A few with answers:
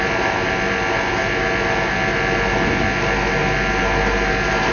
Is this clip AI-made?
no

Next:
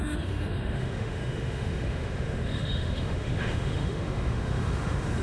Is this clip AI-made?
yes